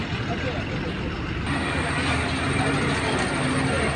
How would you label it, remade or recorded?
recorded